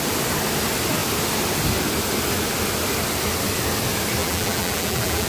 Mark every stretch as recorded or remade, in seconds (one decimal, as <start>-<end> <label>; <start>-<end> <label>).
0.0-4.2 recorded; 4.2-5.3 remade